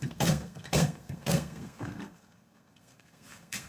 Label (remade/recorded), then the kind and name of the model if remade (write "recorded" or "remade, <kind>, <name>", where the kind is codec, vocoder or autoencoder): remade, codec, SNAC